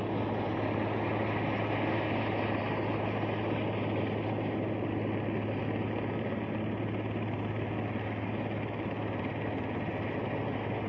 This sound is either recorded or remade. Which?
recorded